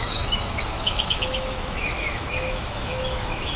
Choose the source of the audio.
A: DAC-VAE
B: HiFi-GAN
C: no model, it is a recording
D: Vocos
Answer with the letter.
A